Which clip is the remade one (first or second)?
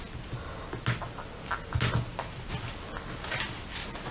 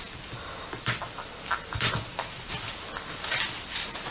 second